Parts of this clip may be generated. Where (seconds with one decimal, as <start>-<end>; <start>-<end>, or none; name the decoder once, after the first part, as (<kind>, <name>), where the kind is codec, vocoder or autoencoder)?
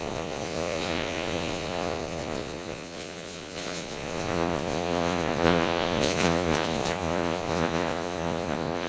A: 0.0-8.9 (vocoder, Vocos)